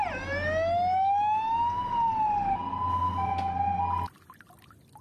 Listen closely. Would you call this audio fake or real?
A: real